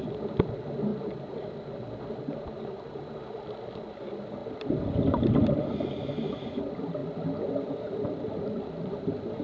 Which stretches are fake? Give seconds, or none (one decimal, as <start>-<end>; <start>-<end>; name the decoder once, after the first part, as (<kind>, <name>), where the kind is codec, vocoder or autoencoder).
none